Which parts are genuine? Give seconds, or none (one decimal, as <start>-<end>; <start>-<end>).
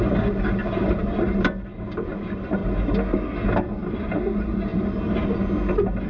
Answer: 2.6-3.9; 4.7-6.1